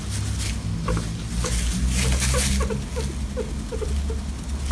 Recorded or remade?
recorded